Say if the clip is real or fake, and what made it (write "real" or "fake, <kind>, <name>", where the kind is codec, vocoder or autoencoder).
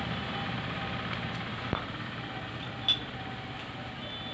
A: real